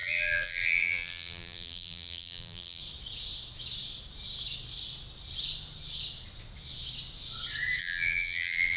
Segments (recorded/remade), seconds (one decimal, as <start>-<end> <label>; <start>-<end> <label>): 0.0-2.8 remade; 2.8-7.8 recorded; 7.8-8.8 remade

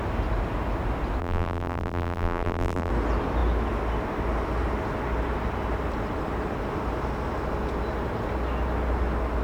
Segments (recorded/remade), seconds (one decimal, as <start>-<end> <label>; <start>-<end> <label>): 0.0-1.2 recorded; 1.2-2.9 remade; 2.9-9.4 recorded

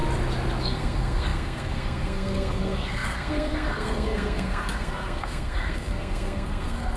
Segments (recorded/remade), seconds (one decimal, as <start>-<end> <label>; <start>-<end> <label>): 0.0-0.6 recorded; 0.6-7.0 remade

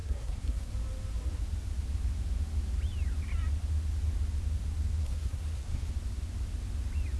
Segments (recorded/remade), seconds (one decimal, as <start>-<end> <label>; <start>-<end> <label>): 0.0-0.7 remade; 0.7-5.0 recorded; 5.0-5.9 remade; 5.9-7.2 recorded

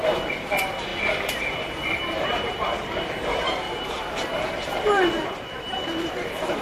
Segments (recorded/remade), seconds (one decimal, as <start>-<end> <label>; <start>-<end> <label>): 0.0-0.9 remade; 0.9-1.4 recorded; 1.4-6.6 remade